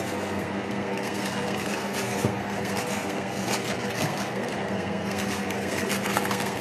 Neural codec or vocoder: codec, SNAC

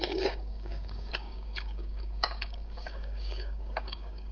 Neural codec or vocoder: codec, DAC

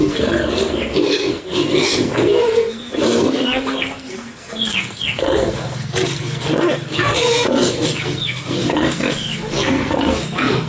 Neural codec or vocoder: codec, SNAC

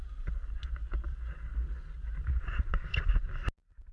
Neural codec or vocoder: none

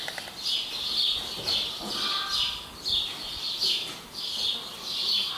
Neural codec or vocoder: none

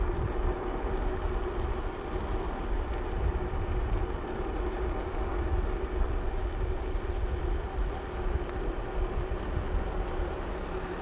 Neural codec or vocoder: none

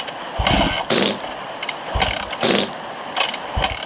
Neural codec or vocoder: none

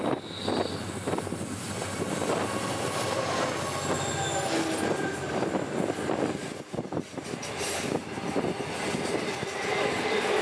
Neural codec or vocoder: none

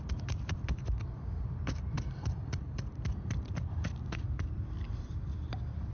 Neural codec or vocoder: vocoder, BigVGAN v2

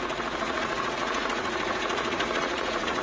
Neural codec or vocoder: vocoder, Vocos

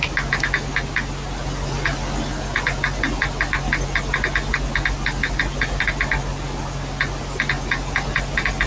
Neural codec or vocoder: none